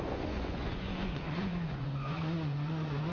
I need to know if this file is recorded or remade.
remade